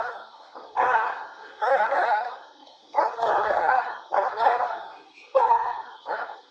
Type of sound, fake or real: fake